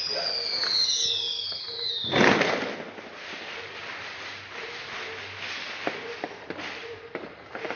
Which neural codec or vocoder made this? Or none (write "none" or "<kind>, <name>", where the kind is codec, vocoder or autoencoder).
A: none